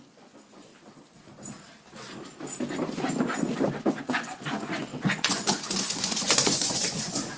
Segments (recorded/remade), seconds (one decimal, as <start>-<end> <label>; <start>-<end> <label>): 0.0-0.7 remade; 0.7-4.0 recorded; 4.0-7.4 remade

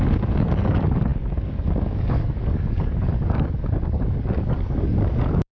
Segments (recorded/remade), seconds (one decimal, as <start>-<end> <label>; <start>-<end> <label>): 0.0-5.5 remade

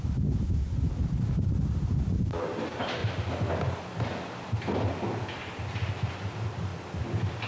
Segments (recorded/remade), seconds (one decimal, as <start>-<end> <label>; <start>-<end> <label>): 0.0-7.5 recorded

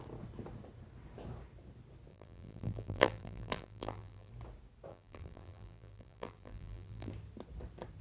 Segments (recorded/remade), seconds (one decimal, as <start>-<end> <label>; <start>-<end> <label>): 0.0-2.1 recorded; 2.1-4.3 remade; 4.3-4.9 recorded; 4.9-7.1 remade; 7.1-8.0 recorded